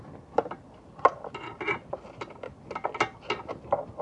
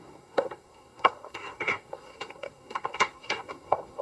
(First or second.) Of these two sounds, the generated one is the second